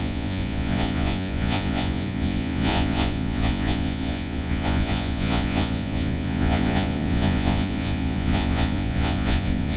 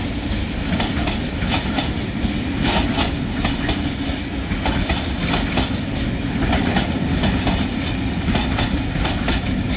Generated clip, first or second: first